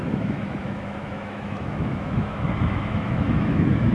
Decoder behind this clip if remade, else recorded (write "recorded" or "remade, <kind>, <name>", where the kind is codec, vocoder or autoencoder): remade, autoencoder, DAC-VAE